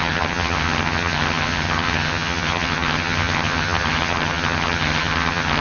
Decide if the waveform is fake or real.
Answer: fake